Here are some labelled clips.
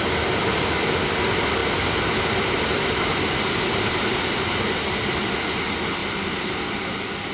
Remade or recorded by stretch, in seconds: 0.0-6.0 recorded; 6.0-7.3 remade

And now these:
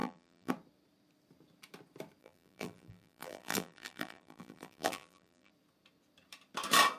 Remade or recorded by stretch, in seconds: 0.0-0.5 remade; 0.5-2.2 recorded; 2.2-5.5 remade; 5.5-7.0 recorded

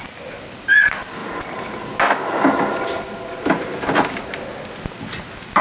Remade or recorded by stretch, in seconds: 0.0-5.6 recorded

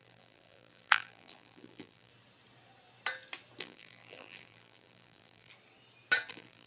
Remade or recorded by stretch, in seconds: 0.0-2.1 remade; 2.1-3.6 recorded; 3.6-5.5 remade; 5.5-6.3 recorded; 6.3-6.7 remade

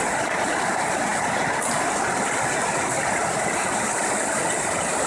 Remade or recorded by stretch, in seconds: 0.0-5.1 recorded

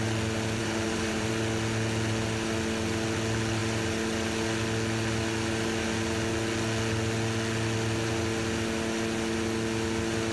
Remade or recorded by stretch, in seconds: 0.0-0.6 recorded; 0.6-1.3 remade; 1.3-10.3 recorded

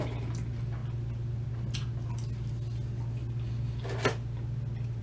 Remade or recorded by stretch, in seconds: 0.0-5.0 recorded

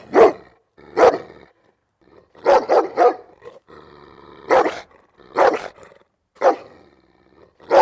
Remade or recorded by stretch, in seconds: 0.0-1.8 recorded; 1.8-6.5 remade; 6.5-7.8 recorded